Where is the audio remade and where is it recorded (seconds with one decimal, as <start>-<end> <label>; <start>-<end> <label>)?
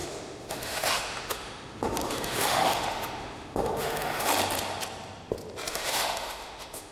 0.0-4.3 remade; 4.3-5.7 recorded; 5.7-6.9 remade